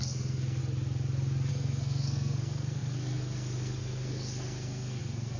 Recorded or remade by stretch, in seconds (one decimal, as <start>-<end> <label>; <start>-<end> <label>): 0.0-0.6 remade; 0.6-1.5 recorded; 1.5-5.4 remade